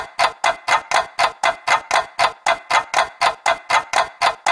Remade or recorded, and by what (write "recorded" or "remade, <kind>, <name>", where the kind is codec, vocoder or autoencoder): recorded